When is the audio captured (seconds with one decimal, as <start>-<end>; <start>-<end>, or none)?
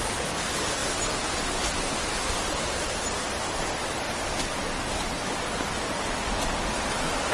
0.0-7.3